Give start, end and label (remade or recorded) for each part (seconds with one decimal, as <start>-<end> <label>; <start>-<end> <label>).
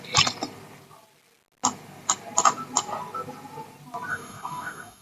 0.0-4.1 recorded; 4.1-5.0 remade